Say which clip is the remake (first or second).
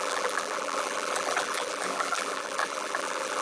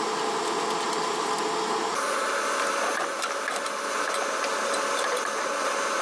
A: first